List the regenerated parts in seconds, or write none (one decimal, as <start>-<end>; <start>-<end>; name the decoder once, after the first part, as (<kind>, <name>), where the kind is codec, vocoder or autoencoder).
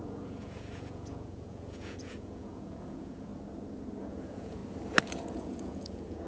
0.0-3.3 (vocoder, Vocos); 4.0-4.6; 5.1-6.3